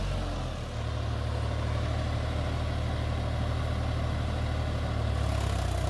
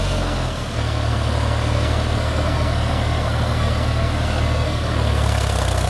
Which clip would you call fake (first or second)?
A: second